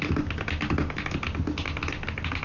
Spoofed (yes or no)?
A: no